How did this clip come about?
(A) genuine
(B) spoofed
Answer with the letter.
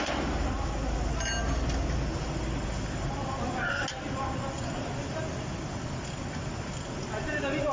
A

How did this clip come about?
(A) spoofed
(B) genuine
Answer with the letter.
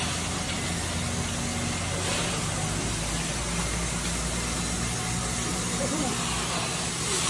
B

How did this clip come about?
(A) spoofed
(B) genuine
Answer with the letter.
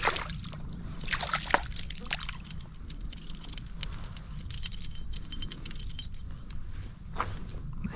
B